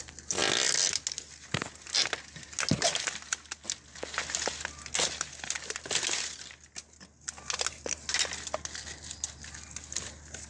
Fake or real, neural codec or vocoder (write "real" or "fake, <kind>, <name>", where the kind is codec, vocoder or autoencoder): real